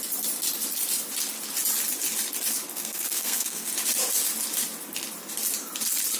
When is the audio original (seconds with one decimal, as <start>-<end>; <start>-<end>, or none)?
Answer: 0.0-2.7; 3.7-6.2